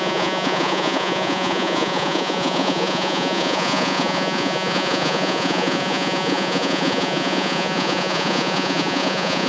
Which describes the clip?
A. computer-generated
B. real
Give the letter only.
A